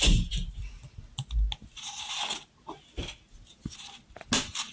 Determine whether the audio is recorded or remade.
recorded